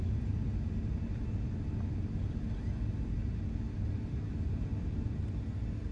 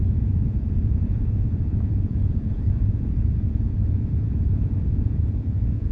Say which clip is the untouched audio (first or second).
first